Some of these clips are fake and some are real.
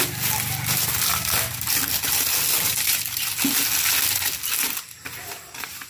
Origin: real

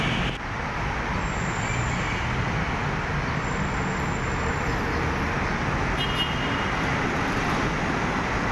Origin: real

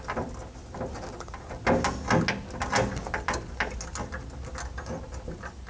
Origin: real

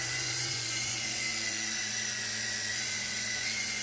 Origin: fake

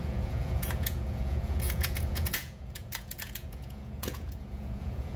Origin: fake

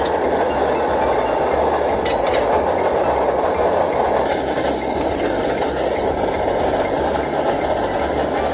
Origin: real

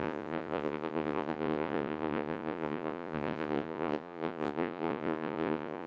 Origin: fake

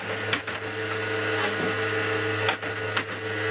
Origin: real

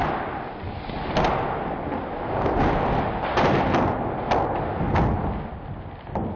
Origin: real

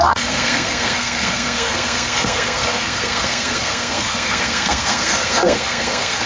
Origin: fake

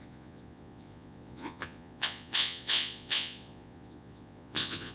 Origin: fake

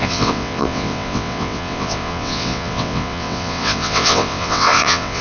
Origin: fake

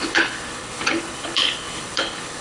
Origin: fake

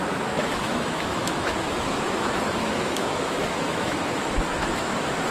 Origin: fake